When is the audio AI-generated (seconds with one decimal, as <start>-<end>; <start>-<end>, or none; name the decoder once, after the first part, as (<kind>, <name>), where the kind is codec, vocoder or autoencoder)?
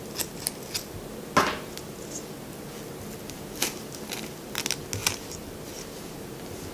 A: none